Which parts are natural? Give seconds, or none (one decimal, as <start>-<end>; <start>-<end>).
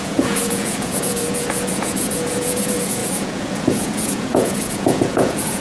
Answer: none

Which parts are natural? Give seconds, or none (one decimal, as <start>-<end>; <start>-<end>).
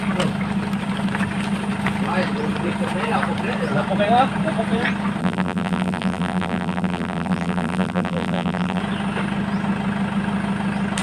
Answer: 0.0-5.2; 8.8-11.0